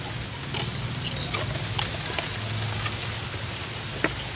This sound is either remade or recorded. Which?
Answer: recorded